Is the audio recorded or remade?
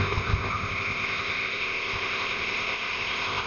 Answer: remade